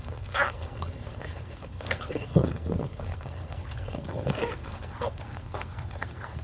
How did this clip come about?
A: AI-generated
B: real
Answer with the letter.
A